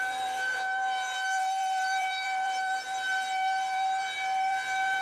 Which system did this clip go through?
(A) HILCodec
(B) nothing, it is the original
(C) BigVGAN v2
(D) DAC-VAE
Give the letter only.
C